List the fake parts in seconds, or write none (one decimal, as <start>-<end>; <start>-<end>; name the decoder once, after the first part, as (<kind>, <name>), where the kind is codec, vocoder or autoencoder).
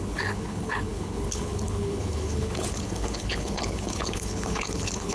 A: 0.0-5.1 (codec, HILCodec)